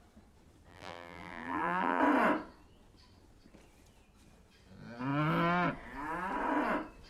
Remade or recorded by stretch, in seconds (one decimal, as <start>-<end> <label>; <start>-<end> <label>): 0.0-0.7 recorded; 0.7-2.0 remade; 2.0-7.1 recorded